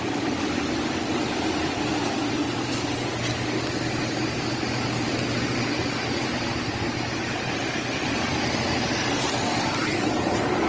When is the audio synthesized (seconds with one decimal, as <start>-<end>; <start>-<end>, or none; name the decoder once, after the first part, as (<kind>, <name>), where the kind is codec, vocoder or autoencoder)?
none